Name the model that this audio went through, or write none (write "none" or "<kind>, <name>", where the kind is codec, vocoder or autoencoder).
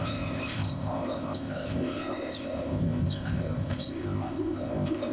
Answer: codec, ZipCodec